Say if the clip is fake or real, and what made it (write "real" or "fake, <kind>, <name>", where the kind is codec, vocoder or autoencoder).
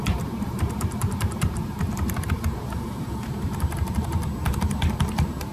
fake, vocoder, BigVGAN v2